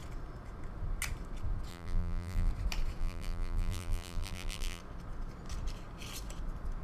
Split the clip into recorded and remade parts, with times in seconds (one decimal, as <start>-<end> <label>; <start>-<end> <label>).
0.0-1.7 recorded; 1.7-2.5 remade; 2.5-3.0 recorded; 3.0-4.8 remade; 4.8-6.8 recorded